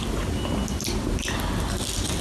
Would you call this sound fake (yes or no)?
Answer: no